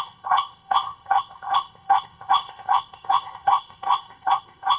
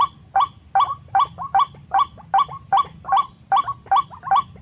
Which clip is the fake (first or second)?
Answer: first